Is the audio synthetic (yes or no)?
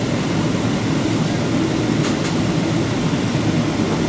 no